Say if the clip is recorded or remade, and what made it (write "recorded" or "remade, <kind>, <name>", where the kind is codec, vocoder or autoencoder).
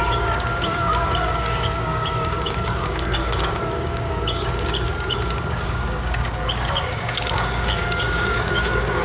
remade, codec, DAC